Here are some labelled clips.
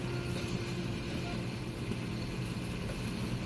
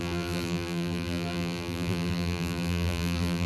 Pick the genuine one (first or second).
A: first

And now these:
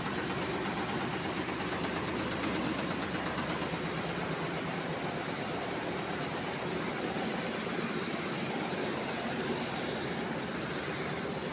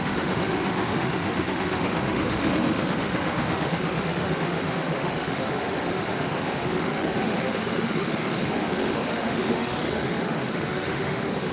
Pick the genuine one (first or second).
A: first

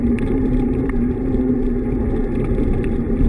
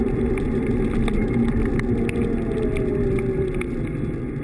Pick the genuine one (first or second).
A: second